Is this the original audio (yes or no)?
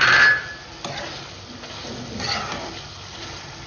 yes